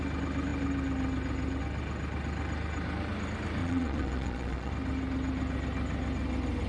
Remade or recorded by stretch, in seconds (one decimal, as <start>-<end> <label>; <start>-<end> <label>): 0.0-3.6 recorded; 3.6-4.7 remade; 4.7-6.7 recorded